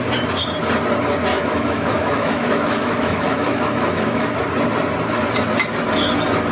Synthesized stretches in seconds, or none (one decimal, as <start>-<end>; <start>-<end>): 1.3-4.4

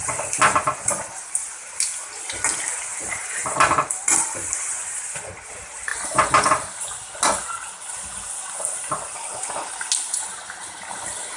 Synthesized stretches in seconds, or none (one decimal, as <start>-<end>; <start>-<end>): 2.9-4.5; 5.9-6.8